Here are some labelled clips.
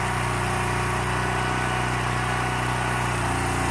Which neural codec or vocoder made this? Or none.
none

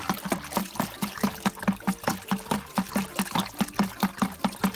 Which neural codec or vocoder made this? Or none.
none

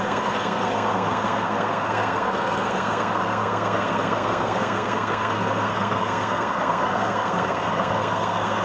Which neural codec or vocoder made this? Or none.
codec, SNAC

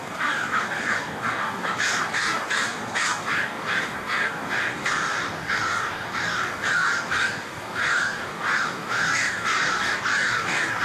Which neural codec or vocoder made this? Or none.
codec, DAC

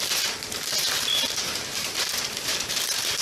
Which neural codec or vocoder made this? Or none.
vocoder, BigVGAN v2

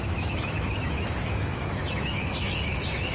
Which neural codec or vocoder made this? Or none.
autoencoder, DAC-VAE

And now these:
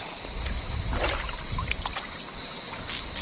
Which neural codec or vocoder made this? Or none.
none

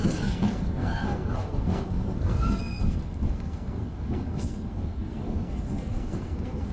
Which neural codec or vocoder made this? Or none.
codec, SNAC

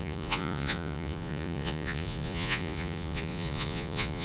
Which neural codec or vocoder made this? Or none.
vocoder, Vocos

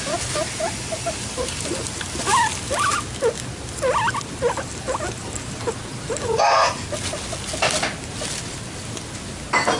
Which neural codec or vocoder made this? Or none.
none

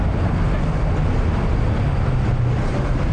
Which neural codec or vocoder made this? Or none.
none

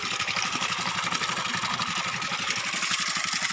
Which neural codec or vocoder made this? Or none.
none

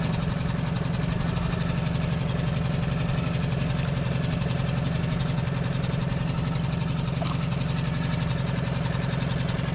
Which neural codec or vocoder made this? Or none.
none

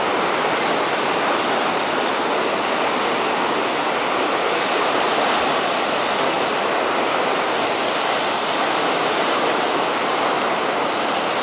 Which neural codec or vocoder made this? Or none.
none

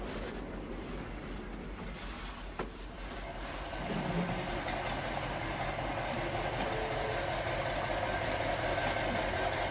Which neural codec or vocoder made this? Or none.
none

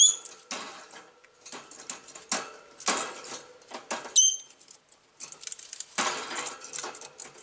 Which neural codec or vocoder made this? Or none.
none